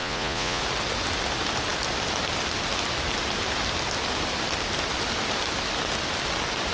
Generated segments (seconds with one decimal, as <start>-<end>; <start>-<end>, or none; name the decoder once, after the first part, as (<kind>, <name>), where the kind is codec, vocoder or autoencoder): 0.0-0.6 (vocoder, Vocos)